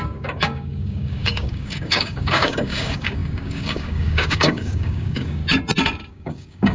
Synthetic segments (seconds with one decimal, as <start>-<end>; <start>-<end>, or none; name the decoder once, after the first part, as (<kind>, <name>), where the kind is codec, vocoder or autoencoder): 0.0-5.4 (codec, DAC); 6.1-6.7